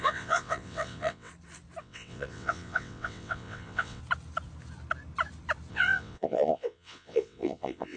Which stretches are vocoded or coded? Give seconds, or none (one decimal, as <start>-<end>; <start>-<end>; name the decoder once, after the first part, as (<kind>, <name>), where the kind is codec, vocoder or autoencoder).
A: 0.0-1.3 (vocoder, WaveNeXt); 1.8-4.0; 5.7-8.0